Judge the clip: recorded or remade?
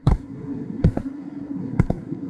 remade